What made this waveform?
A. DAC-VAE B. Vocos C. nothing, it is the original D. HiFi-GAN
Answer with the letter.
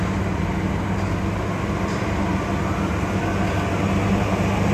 C